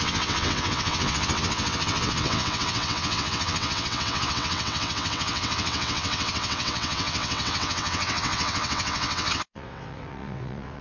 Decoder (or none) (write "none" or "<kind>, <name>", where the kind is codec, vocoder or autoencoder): vocoder, WaveNeXt